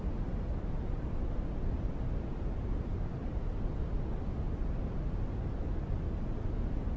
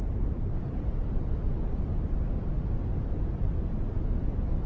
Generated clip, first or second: second